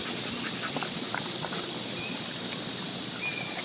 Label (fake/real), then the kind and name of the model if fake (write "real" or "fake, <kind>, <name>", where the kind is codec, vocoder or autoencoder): real